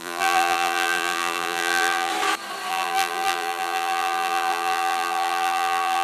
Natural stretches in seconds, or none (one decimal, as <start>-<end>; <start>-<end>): 2.1-2.7